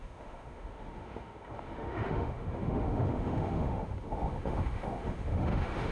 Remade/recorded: remade